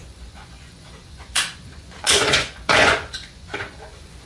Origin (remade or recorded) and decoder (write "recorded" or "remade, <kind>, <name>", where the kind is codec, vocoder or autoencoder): remade, vocoder, Vocos